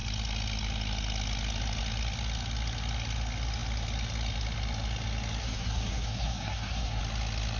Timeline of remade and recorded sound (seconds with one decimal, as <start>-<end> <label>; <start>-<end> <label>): 0.0-5.4 recorded; 5.4-7.0 remade; 7.0-7.6 recorded